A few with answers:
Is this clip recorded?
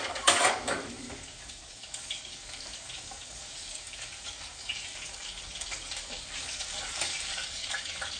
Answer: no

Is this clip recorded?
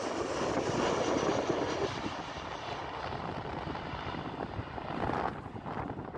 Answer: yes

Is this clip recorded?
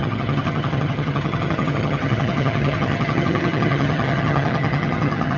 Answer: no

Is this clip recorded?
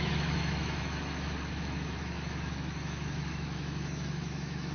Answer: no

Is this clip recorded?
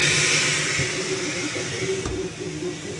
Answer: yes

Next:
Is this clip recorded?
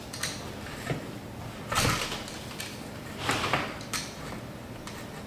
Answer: yes